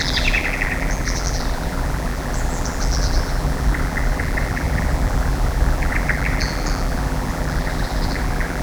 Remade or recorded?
remade